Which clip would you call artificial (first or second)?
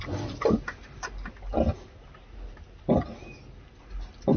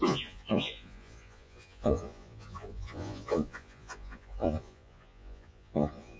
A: second